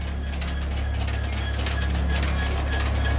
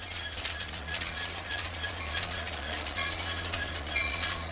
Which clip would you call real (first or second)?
first